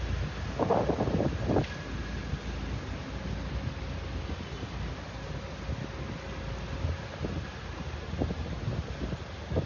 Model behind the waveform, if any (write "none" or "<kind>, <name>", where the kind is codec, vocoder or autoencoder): none